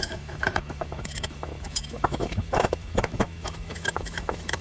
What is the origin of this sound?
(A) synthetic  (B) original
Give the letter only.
A